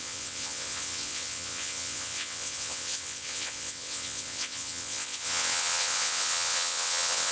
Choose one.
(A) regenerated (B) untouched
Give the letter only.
A